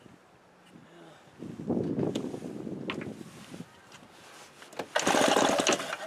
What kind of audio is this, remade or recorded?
recorded